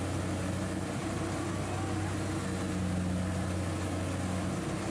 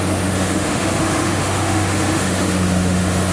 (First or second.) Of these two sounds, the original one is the first